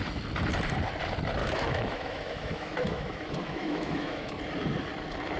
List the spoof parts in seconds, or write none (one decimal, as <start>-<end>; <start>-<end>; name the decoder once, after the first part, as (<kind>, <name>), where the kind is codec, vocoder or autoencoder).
1.4-4.4 (autoencoder, DAC-VAE)